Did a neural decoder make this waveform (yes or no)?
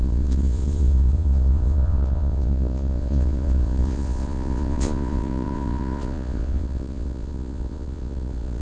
yes